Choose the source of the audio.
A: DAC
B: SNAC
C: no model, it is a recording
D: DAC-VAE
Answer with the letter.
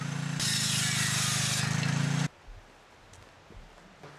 C